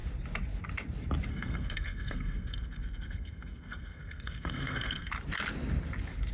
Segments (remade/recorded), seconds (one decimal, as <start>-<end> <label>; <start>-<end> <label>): 0.0-1.3 recorded; 1.3-5.1 remade; 5.1-6.3 recorded